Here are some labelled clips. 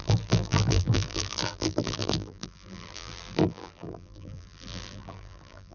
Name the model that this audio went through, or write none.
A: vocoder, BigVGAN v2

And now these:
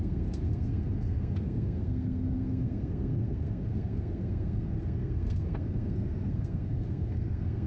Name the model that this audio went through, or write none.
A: codec, SNAC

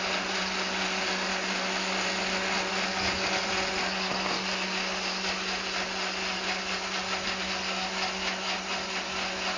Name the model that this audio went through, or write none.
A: none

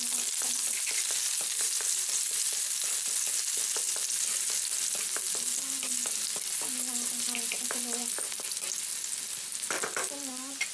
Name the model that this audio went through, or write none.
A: none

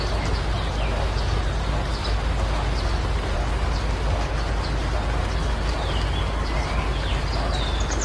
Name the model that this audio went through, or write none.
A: none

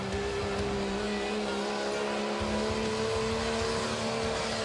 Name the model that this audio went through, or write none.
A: none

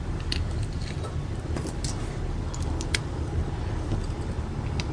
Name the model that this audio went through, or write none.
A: none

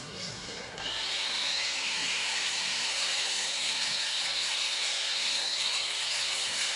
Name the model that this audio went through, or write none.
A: codec, SNAC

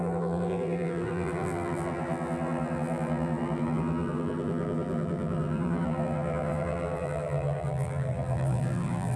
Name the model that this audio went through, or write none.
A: vocoder, BigVGAN v2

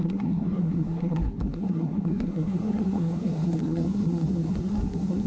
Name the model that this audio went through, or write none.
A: codec, SNAC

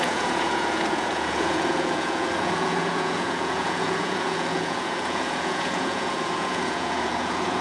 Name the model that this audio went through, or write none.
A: vocoder, Vocos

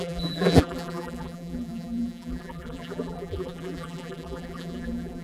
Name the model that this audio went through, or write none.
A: vocoder, BigVGAN v2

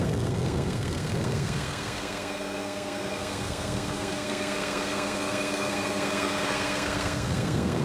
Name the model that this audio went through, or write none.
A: codec, SNAC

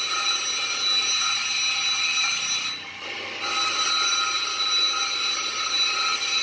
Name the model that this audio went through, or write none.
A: none